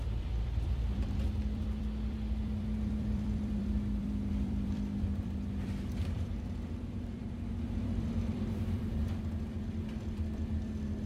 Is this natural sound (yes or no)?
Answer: no